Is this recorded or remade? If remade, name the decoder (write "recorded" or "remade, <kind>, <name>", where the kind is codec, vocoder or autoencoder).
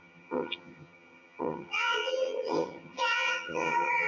remade, vocoder, HiFi-GAN